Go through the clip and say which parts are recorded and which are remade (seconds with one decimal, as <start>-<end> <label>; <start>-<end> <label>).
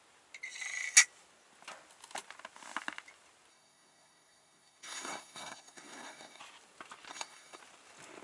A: 0.0-3.5 recorded; 3.5-6.4 remade; 6.4-7.1 recorded; 7.1-7.6 remade; 7.6-8.2 recorded